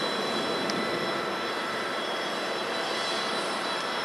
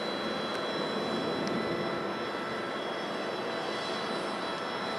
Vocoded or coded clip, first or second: first